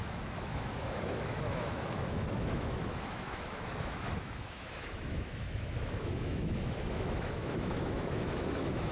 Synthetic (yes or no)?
yes